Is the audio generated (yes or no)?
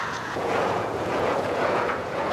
yes